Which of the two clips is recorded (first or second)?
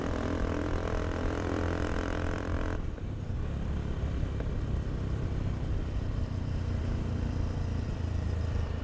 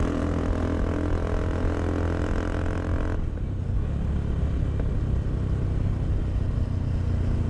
second